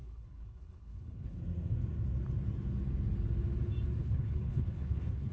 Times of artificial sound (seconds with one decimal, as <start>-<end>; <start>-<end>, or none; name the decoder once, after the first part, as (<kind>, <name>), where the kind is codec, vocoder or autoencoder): 0.0-1.4 (codec, HILCodec); 4.0-5.3